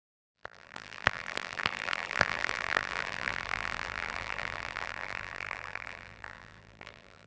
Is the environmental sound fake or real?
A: fake